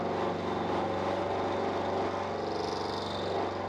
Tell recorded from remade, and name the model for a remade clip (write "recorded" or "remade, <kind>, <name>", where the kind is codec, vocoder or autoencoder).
recorded